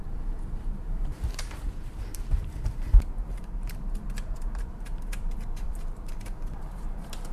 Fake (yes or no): yes